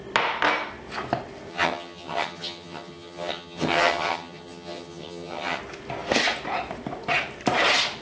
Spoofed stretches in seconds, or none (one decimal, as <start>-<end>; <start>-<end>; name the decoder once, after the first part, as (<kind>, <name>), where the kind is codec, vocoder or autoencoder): 1.5-5.6 (vocoder, HiFi-GAN)